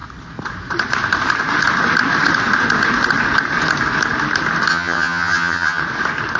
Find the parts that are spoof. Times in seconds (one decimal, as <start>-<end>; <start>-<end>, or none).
4.7-5.8